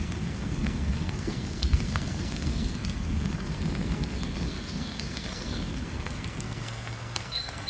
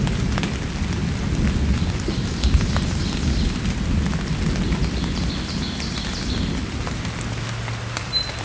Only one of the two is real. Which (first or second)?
second